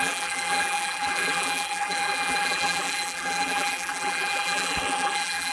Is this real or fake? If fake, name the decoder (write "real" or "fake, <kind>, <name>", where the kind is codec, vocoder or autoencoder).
fake, vocoder, BigVGAN v2